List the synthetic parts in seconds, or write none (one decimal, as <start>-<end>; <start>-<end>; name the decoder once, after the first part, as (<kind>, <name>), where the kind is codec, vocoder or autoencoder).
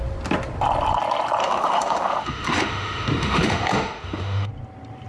1.4-4.5 (autoencoder, DAC-VAE)